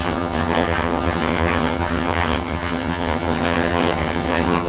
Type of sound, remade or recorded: remade